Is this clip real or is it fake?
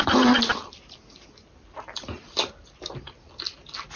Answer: real